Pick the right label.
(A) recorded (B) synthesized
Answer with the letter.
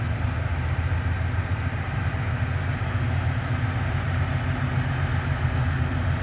A